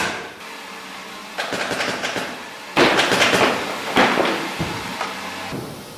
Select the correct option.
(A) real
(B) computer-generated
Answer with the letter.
A